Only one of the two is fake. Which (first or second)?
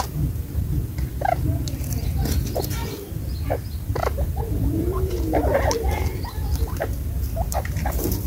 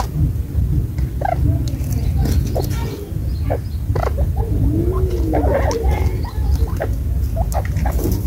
first